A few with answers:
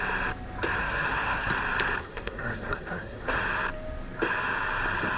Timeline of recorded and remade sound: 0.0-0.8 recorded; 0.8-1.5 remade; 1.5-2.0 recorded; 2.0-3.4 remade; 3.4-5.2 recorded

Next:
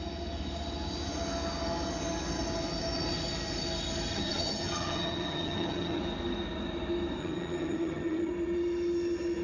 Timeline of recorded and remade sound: 0.0-4.1 recorded; 4.1-6.0 remade; 6.0-7.2 recorded; 7.2-8.3 remade; 8.3-9.4 recorded

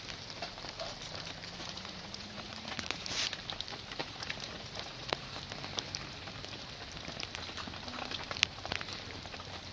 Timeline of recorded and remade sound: 0.0-1.6 recorded; 1.6-3.2 remade; 3.2-4.0 recorded; 4.0-5.3 remade; 5.3-9.7 recorded